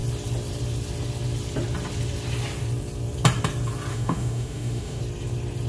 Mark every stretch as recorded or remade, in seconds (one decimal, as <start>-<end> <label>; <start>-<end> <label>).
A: 0.0-3.9 recorded; 3.9-5.0 remade; 5.0-5.7 recorded